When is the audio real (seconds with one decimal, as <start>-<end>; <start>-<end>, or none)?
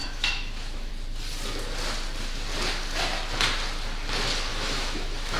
0.9-4.5